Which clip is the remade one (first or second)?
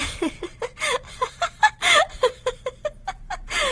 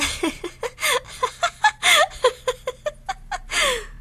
first